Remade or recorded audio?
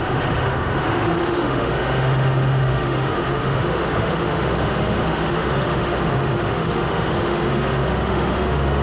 remade